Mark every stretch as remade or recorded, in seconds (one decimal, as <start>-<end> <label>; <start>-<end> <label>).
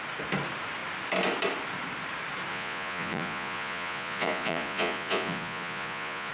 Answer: 0.0-2.5 recorded; 2.5-6.3 remade